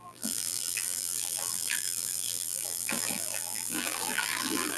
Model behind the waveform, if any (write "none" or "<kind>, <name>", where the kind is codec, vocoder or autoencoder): vocoder, BigVGAN v2